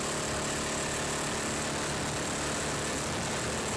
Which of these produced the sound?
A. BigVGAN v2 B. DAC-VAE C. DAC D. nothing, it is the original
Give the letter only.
D